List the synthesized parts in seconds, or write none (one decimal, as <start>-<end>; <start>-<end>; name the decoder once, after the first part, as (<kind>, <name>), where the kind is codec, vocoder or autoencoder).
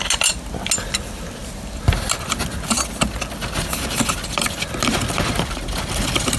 none